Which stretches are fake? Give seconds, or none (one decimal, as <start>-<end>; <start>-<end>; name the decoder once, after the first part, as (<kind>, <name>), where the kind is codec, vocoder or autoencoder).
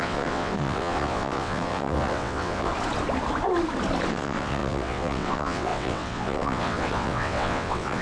0.0-2.7 (vocoder, WaveNeXt); 4.1-8.0